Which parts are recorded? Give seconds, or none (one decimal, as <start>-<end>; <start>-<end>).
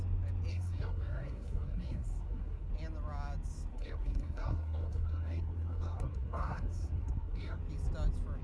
0.0-0.5; 2.7-3.7; 7.6-8.4